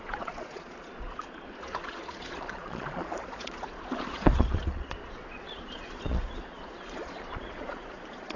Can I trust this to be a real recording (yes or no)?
no